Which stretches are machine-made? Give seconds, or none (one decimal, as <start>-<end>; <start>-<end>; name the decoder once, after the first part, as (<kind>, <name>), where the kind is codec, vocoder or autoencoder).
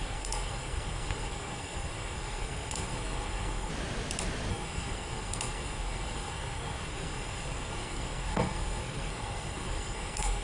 0.0-3.7 (codec, SNAC); 4.5-10.4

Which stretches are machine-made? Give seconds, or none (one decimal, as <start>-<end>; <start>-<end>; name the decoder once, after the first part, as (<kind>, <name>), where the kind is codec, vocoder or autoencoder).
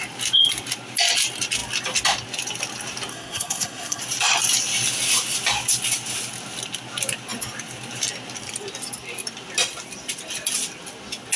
3.1-4.0 (codec, SNAC)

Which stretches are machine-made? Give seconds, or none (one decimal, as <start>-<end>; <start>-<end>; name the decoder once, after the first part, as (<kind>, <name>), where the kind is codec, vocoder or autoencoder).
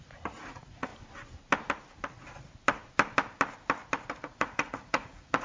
0.0-0.9 (vocoder, Vocos); 4.1-5.4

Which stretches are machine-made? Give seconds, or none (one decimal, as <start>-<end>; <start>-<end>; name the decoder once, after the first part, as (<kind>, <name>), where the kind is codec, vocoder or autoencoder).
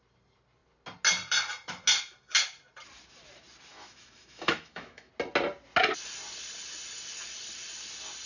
3.7-5.1 (autoencoder, DAC-VAE)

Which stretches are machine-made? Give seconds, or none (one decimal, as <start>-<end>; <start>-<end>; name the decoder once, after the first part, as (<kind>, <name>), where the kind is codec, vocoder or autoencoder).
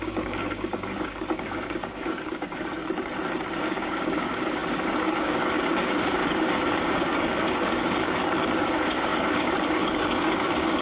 0.0-2.8 (codec, DAC); 3.6-10.8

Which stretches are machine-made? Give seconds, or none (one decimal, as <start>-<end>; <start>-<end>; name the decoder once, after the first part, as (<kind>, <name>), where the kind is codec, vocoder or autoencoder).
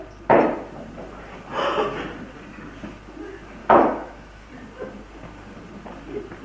3.6-4.5 (autoencoder, DAC-VAE)